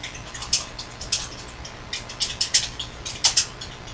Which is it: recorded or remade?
recorded